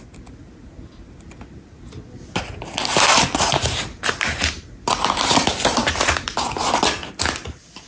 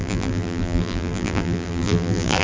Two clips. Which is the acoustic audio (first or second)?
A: first